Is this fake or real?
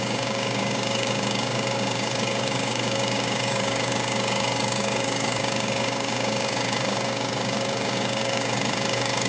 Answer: fake